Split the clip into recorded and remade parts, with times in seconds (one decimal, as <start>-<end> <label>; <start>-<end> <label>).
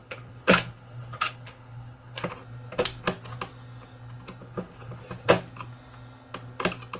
0.0-2.3 remade; 2.3-4.4 recorded; 4.4-5.0 remade; 5.0-7.0 recorded